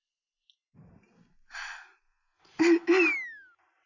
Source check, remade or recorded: recorded